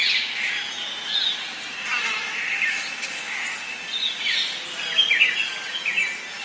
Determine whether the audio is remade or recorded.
recorded